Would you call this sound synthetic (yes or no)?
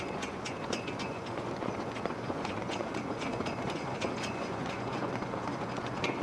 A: yes